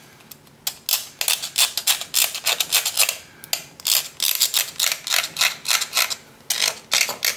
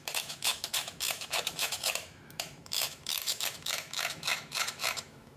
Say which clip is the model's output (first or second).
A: second